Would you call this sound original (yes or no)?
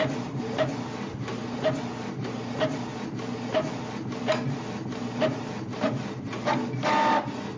yes